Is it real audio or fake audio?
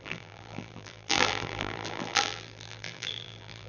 fake